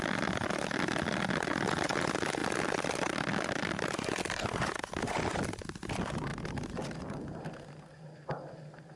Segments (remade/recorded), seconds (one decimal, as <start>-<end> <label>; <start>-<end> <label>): 0.0-9.0 recorded